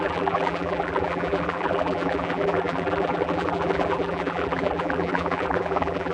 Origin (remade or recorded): remade